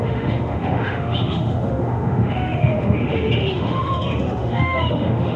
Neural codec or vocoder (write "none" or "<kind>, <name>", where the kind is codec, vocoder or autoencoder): autoencoder, DAC-VAE